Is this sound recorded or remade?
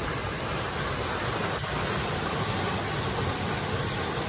recorded